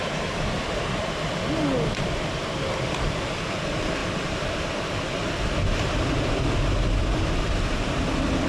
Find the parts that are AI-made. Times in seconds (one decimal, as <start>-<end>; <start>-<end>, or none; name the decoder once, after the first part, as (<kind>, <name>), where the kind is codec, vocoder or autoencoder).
none